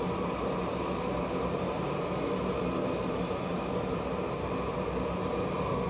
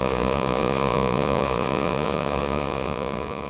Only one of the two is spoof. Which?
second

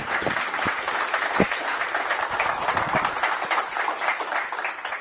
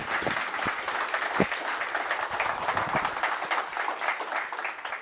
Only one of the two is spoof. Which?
first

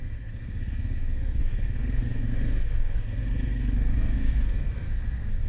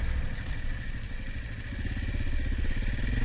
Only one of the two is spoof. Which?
first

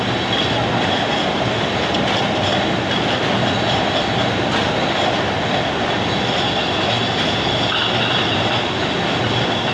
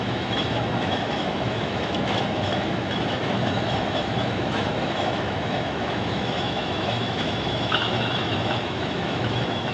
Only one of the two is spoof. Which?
second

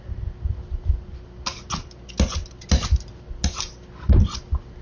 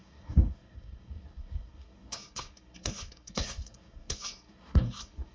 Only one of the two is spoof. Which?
second